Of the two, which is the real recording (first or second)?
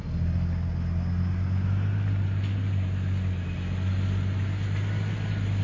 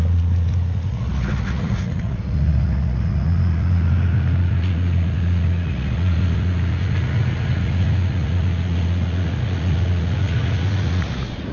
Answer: first